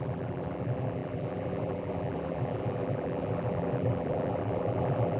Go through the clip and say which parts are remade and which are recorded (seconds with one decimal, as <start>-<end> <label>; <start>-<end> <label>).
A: 0.0-5.2 remade